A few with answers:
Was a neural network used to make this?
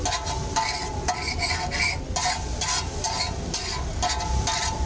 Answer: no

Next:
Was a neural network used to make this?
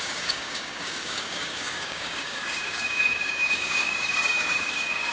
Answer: yes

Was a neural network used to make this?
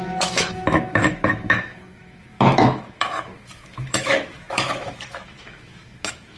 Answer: yes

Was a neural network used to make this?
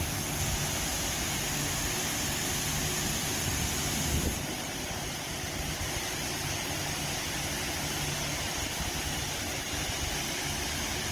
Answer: no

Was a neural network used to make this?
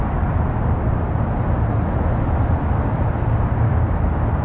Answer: no